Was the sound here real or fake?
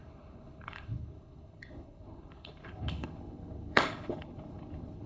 fake